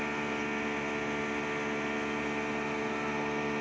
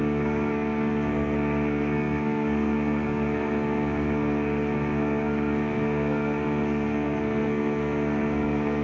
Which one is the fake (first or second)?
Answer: second